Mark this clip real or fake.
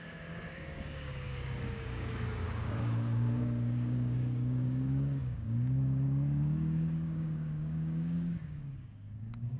fake